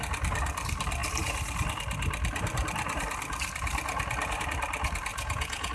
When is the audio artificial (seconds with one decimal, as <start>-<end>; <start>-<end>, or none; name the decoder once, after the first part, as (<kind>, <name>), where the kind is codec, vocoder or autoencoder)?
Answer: 5.1-5.7 (vocoder, Vocos)